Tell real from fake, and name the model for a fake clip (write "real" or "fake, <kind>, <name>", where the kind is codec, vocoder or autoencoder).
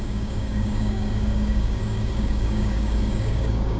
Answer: fake, codec, DAC